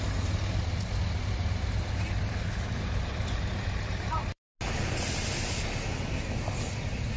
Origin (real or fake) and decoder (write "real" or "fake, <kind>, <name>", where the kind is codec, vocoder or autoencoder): real